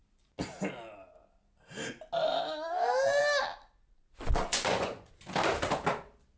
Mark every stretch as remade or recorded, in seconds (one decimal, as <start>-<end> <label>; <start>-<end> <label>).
0.0-4.5 recorded; 4.5-5.1 remade; 5.1-6.4 recorded